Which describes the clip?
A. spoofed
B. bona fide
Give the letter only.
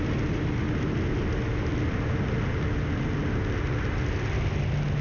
B